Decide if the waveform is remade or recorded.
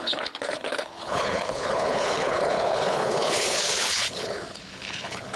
remade